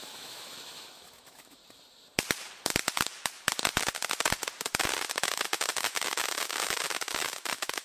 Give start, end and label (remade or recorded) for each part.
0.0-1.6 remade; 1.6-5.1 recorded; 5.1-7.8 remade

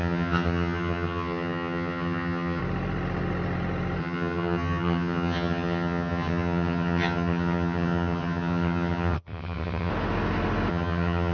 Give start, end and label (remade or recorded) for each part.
0.0-2.6 remade; 2.6-4.0 recorded; 4.0-9.9 remade; 9.9-10.7 recorded; 10.7-11.3 remade

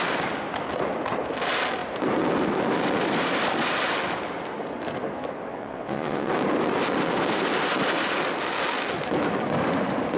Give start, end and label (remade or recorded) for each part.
0.0-5.5 recorded; 5.5-6.3 remade; 6.3-10.2 recorded

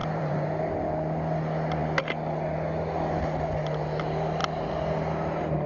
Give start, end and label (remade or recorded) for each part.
0.0-0.6 remade; 0.6-5.7 recorded

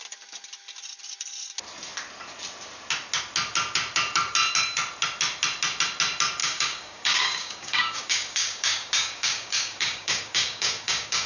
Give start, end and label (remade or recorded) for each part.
0.0-6.4 recorded; 6.4-11.3 remade

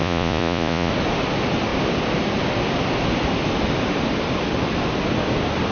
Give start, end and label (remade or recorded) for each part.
0.0-0.9 remade; 0.9-5.7 recorded